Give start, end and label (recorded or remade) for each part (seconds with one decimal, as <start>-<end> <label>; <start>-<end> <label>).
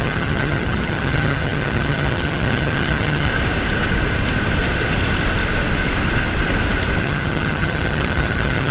0.0-3.3 remade; 3.3-7.0 recorded; 7.0-8.7 remade